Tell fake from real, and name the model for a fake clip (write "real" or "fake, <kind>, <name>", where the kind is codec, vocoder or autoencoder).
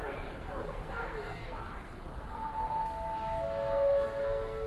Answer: fake, codec, SNAC